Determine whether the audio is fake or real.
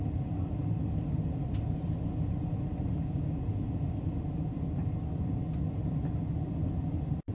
real